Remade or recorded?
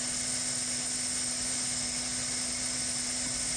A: recorded